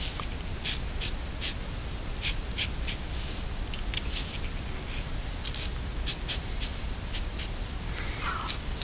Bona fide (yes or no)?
yes